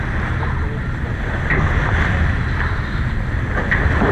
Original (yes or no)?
yes